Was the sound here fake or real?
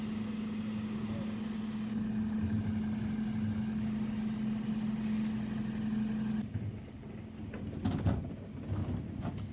real